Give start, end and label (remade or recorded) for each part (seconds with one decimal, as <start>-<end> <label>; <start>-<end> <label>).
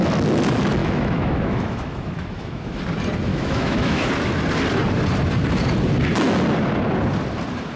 0.0-0.8 recorded; 0.8-2.8 remade; 2.8-3.3 recorded; 3.3-4.1 remade; 4.1-7.8 recorded